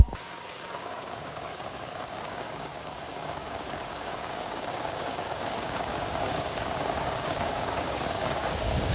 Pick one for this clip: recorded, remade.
remade